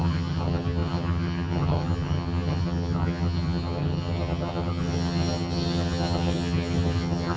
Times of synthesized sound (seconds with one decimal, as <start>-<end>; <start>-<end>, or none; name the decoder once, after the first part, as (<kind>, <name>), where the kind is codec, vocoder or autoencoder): 0.0-7.4 (vocoder, HiFi-GAN)